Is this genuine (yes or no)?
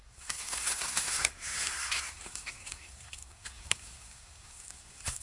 no